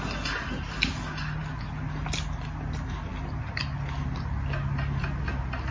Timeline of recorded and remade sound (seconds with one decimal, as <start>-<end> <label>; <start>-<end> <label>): 0.0-5.7 recorded